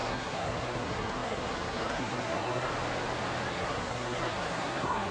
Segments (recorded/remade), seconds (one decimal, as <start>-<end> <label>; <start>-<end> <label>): 0.0-2.7 remade; 2.7-3.5 recorded; 3.5-5.1 remade